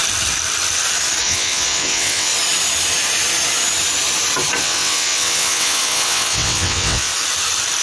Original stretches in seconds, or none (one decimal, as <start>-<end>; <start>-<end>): 0.0-1.2; 2.3-4.6; 7.1-7.8